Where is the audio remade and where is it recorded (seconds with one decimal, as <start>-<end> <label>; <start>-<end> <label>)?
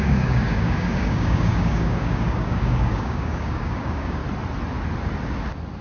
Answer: 0.0-4.2 remade; 4.2-5.8 recorded